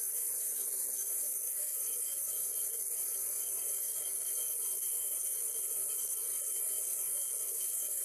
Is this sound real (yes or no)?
no